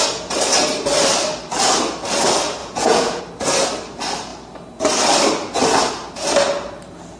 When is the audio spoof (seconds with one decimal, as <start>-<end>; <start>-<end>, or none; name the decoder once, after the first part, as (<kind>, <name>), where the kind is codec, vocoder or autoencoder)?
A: 2.6-3.2 (vocoder, Vocos)